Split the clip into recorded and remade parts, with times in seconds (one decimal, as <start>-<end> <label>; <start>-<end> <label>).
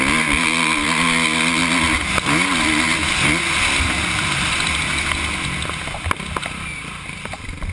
0.0-7.7 recorded